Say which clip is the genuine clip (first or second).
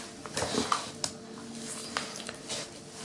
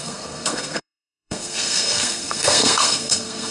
first